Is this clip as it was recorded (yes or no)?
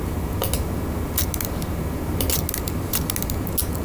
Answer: yes